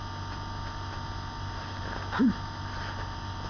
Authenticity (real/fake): real